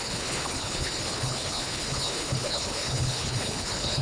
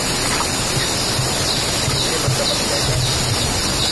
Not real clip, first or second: first